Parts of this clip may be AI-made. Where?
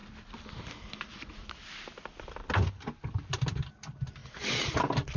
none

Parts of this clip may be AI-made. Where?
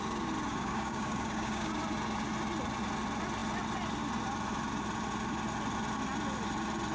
0.5-1.7 (codec, DAC)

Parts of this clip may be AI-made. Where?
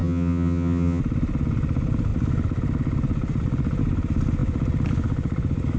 0.0-1.0 (vocoder, HiFi-GAN)